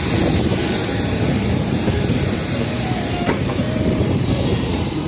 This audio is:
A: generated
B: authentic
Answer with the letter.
A